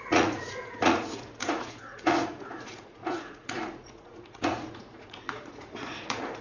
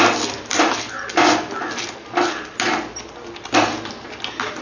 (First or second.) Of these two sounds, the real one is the second